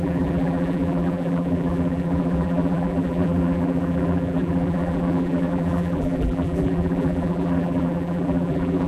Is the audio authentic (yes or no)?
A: no